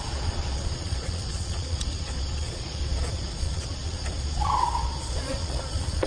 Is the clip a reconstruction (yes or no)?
yes